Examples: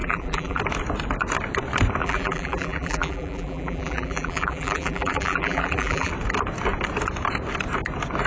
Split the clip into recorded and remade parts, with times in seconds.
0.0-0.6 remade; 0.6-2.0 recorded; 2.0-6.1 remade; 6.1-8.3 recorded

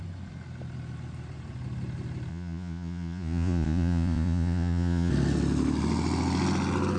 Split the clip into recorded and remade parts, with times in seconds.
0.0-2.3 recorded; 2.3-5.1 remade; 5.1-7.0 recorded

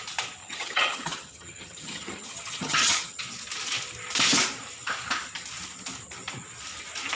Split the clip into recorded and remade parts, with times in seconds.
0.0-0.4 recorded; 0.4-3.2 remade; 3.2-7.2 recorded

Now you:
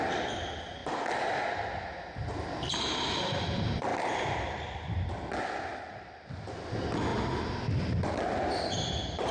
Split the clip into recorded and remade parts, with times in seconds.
0.0-9.3 recorded

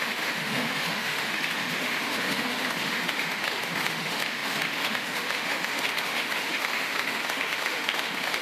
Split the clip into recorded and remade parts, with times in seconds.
0.0-8.4 remade

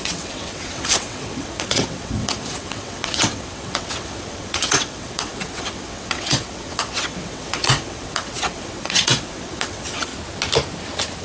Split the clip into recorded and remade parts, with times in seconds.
0.0-10.1 remade; 10.1-11.2 recorded

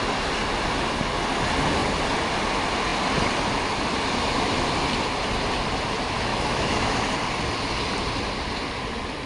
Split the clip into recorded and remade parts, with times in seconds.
0.0-6.3 recorded; 6.3-6.9 remade; 6.9-9.3 recorded

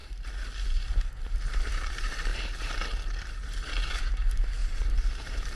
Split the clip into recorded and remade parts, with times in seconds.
0.0-1.5 recorded; 1.5-2.3 remade; 2.3-4.0 recorded; 4.0-5.6 remade